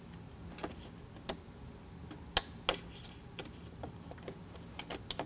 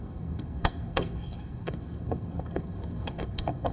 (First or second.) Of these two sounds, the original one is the first